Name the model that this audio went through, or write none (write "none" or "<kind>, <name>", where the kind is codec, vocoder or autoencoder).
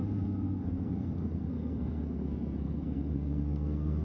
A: codec, SNAC